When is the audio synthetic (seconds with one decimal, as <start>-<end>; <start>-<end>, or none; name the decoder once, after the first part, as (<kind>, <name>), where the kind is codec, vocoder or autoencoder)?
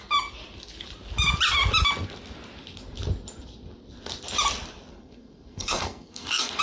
4.9-6.6 (codec, SNAC)